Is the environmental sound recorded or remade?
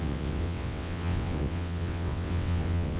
remade